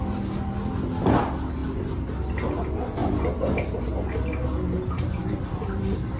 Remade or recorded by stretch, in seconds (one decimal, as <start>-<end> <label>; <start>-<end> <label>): 0.0-3.0 recorded; 3.0-3.9 remade; 3.9-5.2 recorded; 5.2-6.2 remade

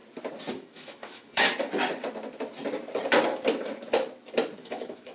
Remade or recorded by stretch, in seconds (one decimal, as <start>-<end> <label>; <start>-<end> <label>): 0.0-0.5 recorded; 0.5-1.5 remade; 1.5-4.6 recorded; 4.6-5.1 remade

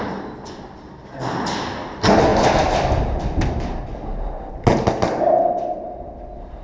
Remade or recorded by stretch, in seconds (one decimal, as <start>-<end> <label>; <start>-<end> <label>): 0.0-6.6 recorded